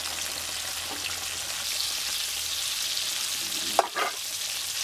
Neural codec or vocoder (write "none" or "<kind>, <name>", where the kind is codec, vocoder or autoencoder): none